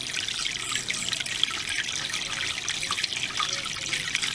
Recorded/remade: recorded